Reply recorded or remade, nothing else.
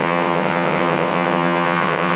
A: remade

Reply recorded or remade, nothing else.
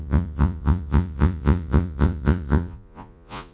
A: remade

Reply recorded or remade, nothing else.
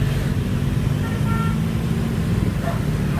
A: recorded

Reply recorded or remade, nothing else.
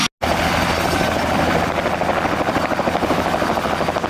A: recorded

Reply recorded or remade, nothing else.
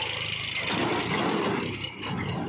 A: recorded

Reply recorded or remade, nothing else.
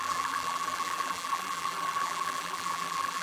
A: remade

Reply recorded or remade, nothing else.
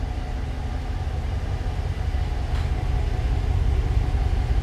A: recorded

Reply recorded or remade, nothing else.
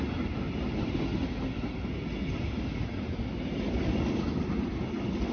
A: recorded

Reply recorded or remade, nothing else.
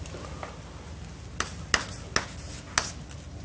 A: recorded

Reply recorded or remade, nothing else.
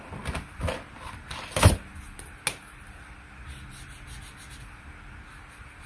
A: recorded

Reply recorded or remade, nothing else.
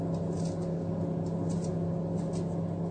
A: recorded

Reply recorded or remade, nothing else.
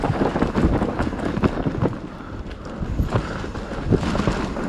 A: recorded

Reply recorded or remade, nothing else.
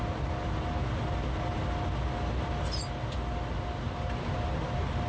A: recorded